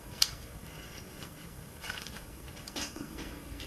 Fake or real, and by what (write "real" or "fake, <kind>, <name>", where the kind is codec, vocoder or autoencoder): fake, codec, SNAC